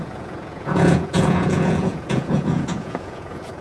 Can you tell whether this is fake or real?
fake